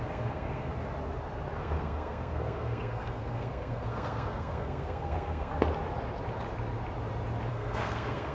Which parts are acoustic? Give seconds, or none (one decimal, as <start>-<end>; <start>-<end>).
0.7-1.6; 5.5-7.5